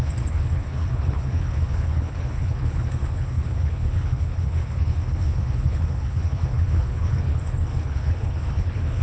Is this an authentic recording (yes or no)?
no